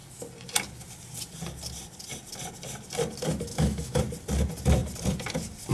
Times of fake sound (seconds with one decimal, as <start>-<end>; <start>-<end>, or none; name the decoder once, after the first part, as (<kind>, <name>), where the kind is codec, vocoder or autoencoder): 3.5-4.0 (autoencoder, DAC-VAE)